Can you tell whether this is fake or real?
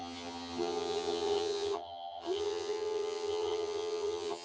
fake